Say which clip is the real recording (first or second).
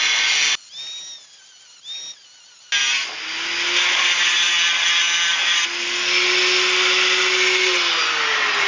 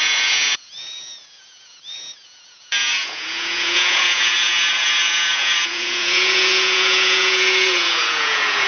first